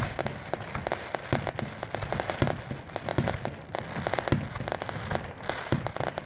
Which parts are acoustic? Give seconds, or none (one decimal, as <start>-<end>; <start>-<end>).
0.0-6.3